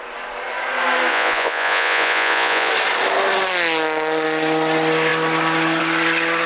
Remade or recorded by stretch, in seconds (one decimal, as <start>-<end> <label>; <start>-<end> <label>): 0.0-1.1 recorded; 1.1-2.7 remade; 2.7-6.5 recorded